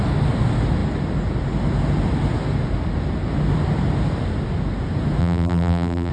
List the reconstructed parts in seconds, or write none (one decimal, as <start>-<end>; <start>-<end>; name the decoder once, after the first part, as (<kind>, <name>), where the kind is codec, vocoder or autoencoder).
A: 5.2-6.1 (vocoder, BigVGAN v2)